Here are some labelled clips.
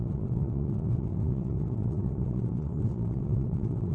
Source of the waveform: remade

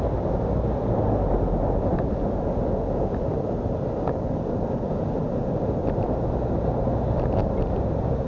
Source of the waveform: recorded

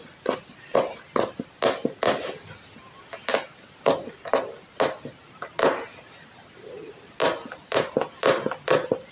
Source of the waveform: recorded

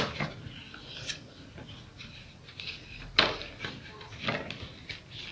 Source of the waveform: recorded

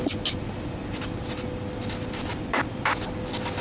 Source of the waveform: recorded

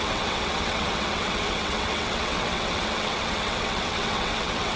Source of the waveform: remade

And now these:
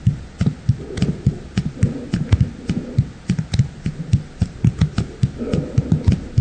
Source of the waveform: recorded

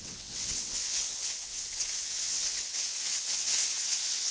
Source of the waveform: remade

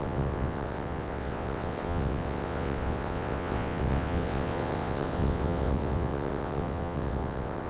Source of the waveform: remade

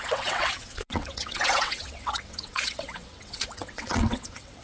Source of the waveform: remade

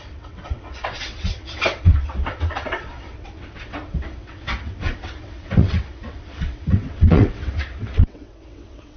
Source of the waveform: remade